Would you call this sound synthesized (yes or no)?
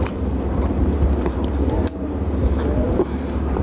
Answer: yes